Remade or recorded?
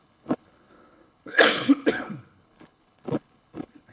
remade